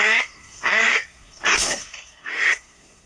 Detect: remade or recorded remade